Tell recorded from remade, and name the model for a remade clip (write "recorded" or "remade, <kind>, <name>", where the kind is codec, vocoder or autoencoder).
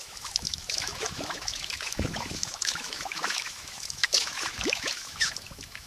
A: remade, autoencoder, DAC-VAE